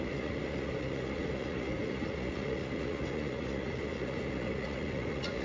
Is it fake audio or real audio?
fake